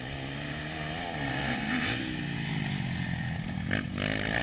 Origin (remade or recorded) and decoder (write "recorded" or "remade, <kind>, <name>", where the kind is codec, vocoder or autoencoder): recorded